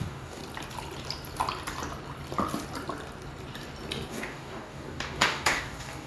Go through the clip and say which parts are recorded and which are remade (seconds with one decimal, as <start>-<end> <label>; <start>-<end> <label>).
0.0-0.4 remade; 0.4-4.1 recorded; 4.1-6.1 remade